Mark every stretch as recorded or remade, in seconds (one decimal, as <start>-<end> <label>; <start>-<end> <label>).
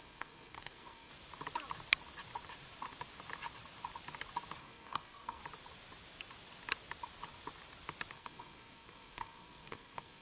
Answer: 0.0-1.1 remade; 1.1-4.6 recorded; 4.6-5.4 remade; 5.4-8.1 recorded; 8.1-10.2 remade